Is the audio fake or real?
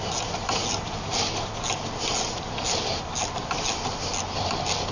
real